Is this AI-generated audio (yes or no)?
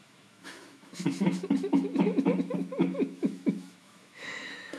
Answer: yes